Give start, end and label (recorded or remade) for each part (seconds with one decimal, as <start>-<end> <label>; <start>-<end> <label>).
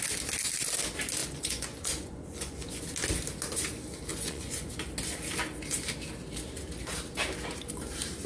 0.0-1.2 recorded; 1.2-2.8 remade; 2.8-4.1 recorded; 4.1-4.7 remade; 4.7-8.3 recorded